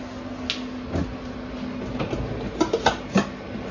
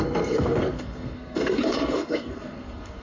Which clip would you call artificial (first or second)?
second